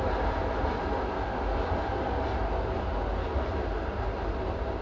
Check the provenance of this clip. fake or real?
real